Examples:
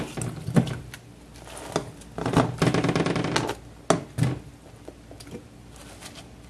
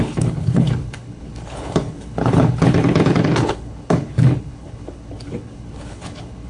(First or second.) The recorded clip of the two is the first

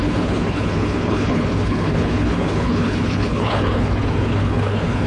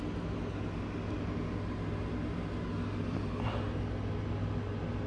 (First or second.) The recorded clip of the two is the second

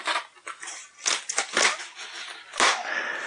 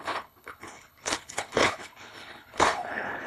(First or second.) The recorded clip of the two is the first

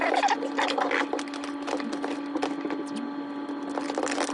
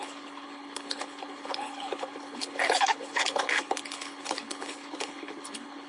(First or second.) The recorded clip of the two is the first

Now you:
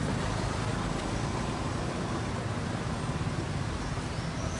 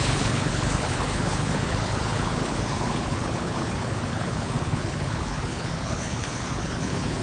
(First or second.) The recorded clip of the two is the first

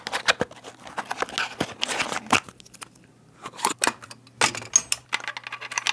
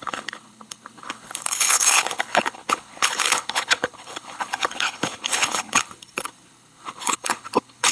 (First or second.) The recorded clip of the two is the first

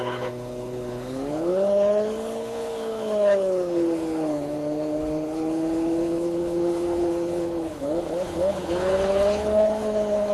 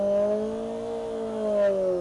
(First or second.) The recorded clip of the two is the second